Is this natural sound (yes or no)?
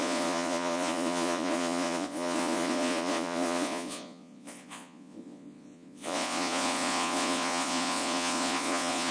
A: no